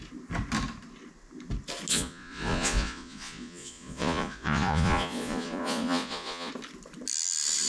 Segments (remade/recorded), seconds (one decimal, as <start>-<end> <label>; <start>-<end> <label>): 0.0-1.9 recorded; 1.9-6.5 remade; 6.5-7.7 recorded